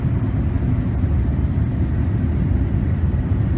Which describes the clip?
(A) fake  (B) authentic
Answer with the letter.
B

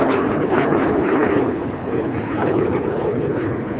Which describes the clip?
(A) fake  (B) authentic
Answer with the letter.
A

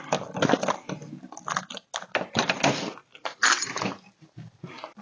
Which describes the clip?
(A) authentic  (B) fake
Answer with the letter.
A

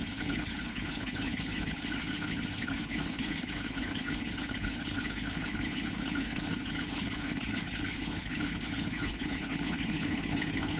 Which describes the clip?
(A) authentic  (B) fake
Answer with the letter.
B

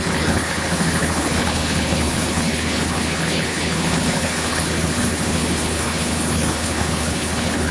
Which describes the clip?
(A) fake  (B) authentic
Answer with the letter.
A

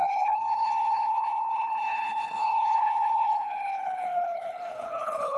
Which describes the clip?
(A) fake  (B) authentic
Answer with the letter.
A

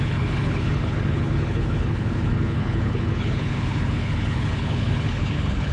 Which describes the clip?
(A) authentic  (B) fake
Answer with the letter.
B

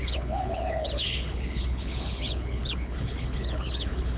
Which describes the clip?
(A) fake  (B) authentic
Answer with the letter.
A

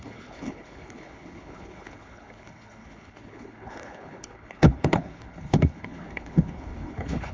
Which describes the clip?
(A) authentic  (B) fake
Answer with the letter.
B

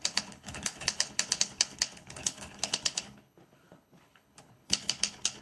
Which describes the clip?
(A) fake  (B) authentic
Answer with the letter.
A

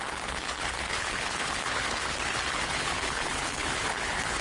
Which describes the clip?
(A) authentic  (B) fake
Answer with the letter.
B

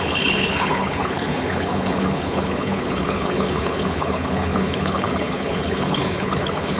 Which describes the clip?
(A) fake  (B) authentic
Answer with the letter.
A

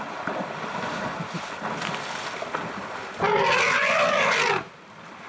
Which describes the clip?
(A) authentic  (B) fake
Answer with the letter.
A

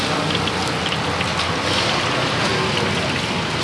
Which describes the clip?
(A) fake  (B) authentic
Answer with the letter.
B